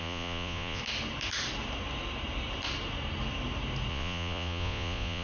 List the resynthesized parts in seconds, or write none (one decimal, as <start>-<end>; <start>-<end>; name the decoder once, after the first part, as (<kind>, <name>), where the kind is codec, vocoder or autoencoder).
0.0-0.8 (vocoder, Vocos); 3.9-5.2